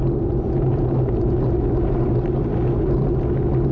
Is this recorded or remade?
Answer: recorded